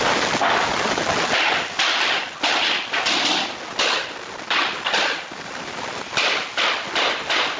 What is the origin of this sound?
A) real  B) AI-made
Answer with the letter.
A